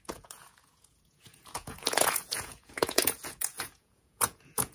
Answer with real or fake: fake